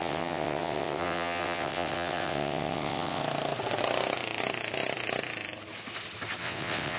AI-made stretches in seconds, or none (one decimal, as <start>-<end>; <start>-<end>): 0.0-3.2; 6.4-7.0

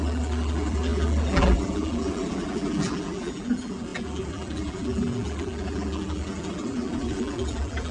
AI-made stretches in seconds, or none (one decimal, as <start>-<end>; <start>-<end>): 0.0-7.9

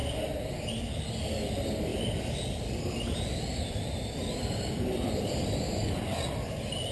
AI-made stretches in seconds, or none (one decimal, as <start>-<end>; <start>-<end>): 0.0-0.7; 1.9-6.0

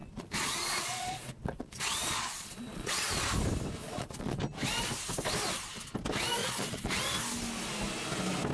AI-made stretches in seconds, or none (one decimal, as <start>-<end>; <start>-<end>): 0.0-3.2; 3.8-4.4; 6.4-7.0

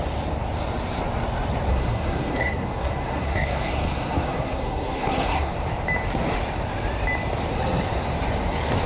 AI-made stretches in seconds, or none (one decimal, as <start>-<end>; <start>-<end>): 1.7-5.5

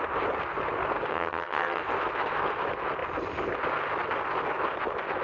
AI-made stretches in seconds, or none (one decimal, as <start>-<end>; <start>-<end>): 1.1-1.8

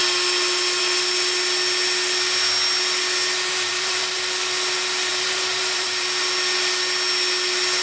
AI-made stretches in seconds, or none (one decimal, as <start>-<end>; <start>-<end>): 3.5-4.2; 5.1-6.2

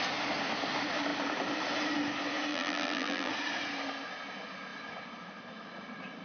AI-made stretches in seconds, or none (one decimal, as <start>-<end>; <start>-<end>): 2.5-3.3